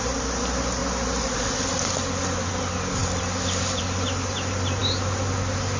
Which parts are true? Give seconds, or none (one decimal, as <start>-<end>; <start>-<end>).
0.0-5.8